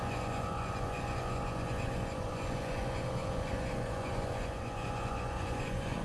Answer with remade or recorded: remade